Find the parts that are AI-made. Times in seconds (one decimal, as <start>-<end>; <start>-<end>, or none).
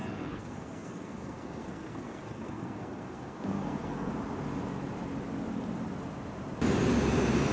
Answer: 0.0-4.1